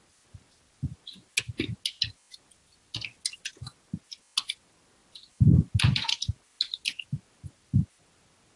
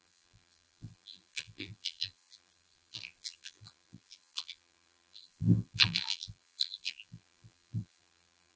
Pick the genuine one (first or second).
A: first